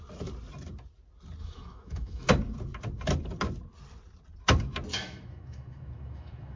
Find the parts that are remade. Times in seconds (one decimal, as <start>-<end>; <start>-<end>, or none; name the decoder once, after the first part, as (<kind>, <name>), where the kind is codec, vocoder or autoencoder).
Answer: 1.4-2.3 (autoencoder, DAC-VAE); 4.9-6.6